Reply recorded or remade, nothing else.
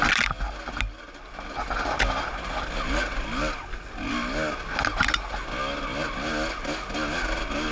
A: recorded